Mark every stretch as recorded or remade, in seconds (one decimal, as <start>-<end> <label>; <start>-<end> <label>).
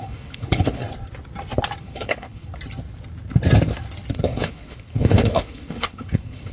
0.0-0.8 remade; 0.8-1.8 recorded; 1.8-2.5 remade; 2.5-4.1 recorded; 4.1-6.5 remade